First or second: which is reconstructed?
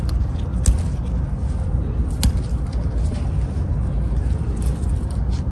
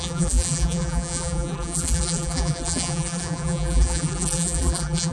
second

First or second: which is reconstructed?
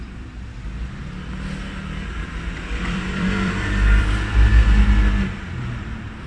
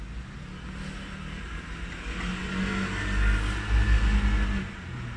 first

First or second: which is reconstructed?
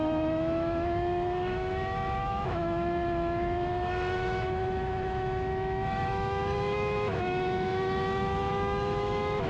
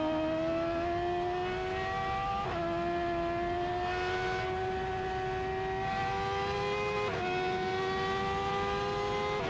first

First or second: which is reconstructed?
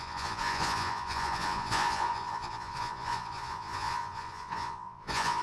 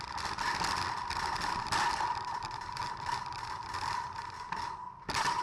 first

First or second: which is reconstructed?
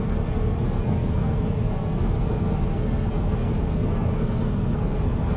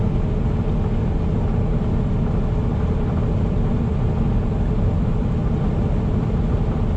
first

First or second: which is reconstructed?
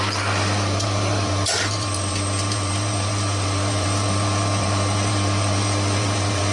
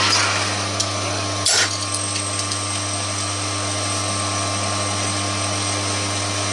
first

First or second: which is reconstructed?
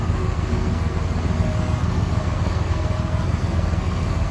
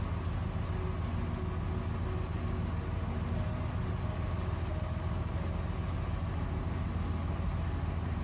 first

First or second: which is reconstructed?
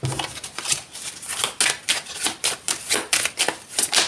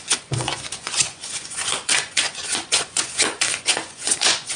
second